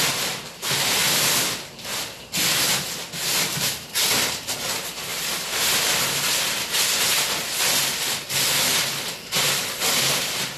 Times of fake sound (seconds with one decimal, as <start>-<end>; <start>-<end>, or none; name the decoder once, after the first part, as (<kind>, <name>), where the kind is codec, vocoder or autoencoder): 5.1-5.7 (vocoder, BigVGAN v2)